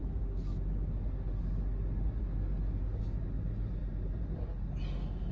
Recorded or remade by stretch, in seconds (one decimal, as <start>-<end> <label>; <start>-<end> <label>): 0.0-5.3 recorded

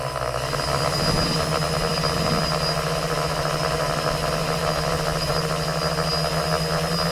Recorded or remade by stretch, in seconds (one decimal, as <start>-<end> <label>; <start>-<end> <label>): 0.0-7.1 recorded

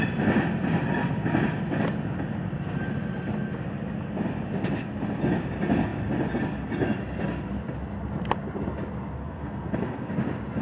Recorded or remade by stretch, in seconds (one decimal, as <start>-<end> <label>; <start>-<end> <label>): 0.0-9.2 recorded; 9.2-10.1 remade; 10.1-10.6 recorded

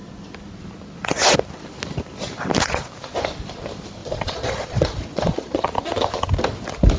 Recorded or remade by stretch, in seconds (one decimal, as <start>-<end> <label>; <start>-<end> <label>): 0.0-4.0 recorded; 4.0-5.6 remade; 5.6-7.0 recorded

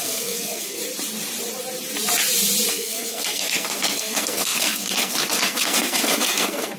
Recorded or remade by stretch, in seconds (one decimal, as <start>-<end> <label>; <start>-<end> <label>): 0.0-0.8 remade; 0.8-2.7 recorded; 2.7-6.8 remade

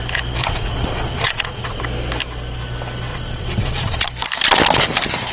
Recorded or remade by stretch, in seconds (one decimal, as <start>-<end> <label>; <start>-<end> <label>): 0.0-0.4 recorded; 0.4-1.8 remade; 1.8-3.1 recorded; 3.1-4.1 remade; 4.1-5.3 recorded

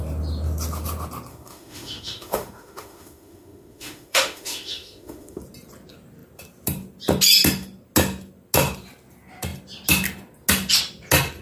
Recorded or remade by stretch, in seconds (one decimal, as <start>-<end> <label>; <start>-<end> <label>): 0.0-1.3 recorded; 1.3-5.4 remade; 5.4-11.4 recorded